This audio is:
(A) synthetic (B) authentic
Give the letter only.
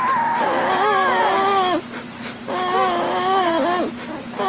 B